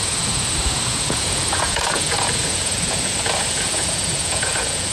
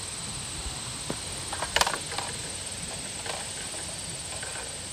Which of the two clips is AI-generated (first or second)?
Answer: first